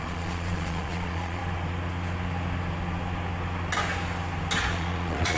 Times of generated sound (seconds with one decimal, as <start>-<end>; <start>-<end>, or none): 0.0-1.4; 4.6-5.4